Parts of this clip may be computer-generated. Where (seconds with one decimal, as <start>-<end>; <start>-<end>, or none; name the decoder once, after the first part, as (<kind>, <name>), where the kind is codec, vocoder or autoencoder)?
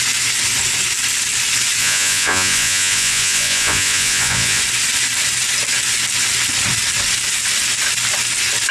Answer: 1.8-4.6 (vocoder, Vocos)